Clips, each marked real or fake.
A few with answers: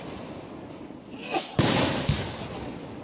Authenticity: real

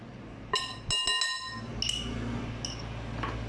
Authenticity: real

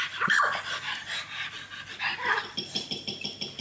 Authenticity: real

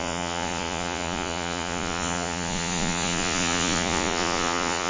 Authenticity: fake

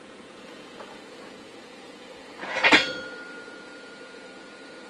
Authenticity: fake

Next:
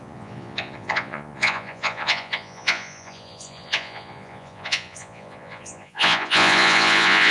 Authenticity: fake